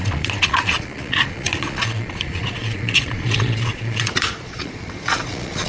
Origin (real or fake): fake